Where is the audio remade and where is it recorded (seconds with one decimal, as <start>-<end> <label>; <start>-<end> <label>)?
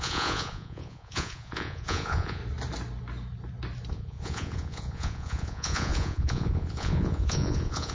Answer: 0.0-2.4 remade; 2.4-3.9 recorded; 3.9-7.9 remade